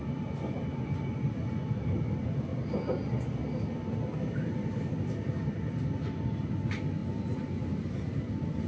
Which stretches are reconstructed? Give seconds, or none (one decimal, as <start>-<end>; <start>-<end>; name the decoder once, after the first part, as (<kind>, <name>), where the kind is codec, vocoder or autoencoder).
none